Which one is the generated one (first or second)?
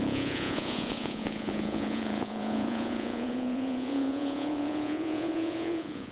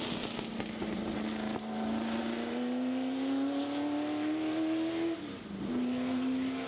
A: first